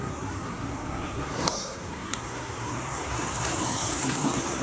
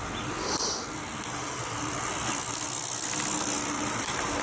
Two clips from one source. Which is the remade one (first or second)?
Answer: first